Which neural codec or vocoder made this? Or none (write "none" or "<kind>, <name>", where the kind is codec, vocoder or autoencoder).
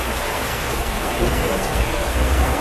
codec, SNAC